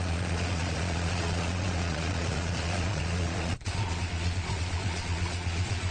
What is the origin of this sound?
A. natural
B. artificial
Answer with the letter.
B